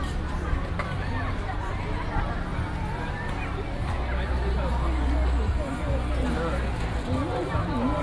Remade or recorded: recorded